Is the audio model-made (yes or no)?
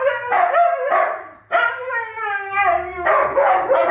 no